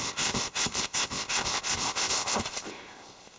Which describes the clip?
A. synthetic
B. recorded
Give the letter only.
A